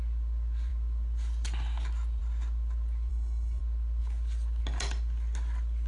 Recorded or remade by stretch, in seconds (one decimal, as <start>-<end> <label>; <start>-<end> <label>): 0.0-3.1 recorded; 3.1-3.6 remade; 3.6-5.9 recorded